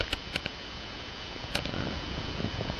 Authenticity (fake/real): fake